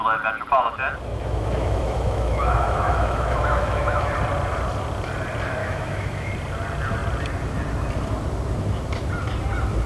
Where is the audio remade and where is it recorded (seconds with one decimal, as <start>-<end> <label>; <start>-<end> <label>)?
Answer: 0.0-1.1 recorded; 1.1-4.1 remade; 4.1-5.6 recorded; 5.6-6.3 remade; 6.3-9.9 recorded